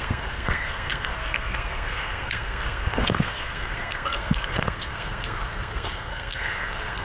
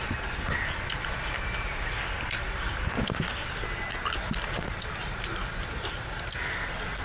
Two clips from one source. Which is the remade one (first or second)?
first